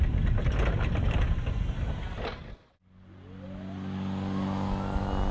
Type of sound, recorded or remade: recorded